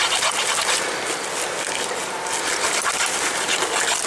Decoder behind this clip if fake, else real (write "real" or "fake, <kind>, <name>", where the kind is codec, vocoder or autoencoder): real